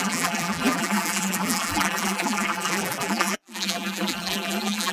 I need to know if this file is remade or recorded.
remade